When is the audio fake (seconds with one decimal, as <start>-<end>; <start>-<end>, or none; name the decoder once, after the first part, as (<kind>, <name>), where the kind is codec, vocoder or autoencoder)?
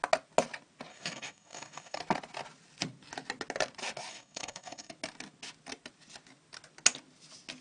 0.9-2.0 (codec, DAC); 4.1-4.9